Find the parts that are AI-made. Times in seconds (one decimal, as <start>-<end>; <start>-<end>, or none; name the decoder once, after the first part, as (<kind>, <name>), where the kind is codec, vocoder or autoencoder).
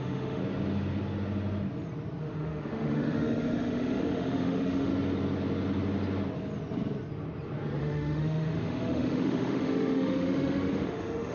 0.0-0.4 (autoencoder, DAC-VAE); 2.2-4.9; 7.8-11.3